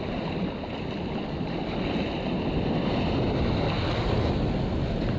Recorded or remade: recorded